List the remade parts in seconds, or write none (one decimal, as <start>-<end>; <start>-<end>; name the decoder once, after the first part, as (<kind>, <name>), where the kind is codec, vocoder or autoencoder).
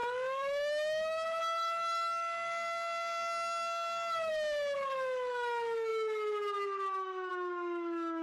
0.0-8.2 (autoencoder, DAC-VAE)